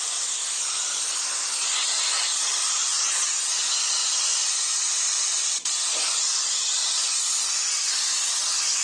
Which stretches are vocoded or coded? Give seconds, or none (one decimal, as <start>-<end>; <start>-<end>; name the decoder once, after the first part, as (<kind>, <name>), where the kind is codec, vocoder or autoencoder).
none